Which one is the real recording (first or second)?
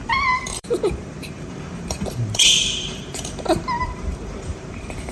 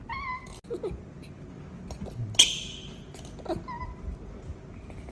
second